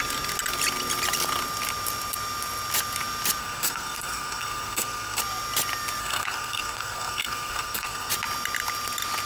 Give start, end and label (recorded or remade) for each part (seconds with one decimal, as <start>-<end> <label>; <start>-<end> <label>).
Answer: 0.0-3.4 recorded; 3.4-5.2 remade; 5.2-6.0 recorded; 6.0-8.1 remade; 8.1-9.3 recorded